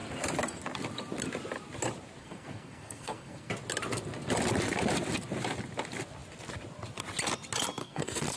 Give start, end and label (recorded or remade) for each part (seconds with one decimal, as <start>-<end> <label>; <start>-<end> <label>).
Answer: 0.0-2.2 recorded; 2.2-3.5 remade; 3.5-7.8 recorded; 7.8-8.4 remade